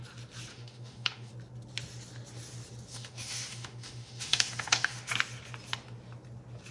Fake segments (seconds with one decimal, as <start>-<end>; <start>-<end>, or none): 0.5-1.3; 2.9-5.1